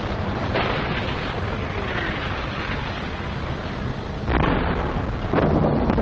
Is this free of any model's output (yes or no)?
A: yes